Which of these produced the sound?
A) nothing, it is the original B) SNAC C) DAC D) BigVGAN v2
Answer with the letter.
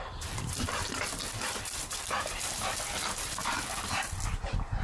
D